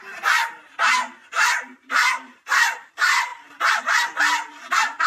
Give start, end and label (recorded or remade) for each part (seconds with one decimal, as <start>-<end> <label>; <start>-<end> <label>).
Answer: 0.0-5.1 recorded